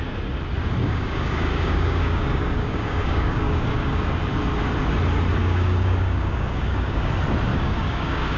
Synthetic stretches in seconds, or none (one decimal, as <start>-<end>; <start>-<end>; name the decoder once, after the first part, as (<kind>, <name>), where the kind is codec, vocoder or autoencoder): 0.8-4.0 (codec, DAC); 5.4-7.1; 7.5-8.4